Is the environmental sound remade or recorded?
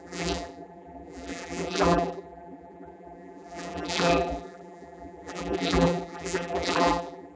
remade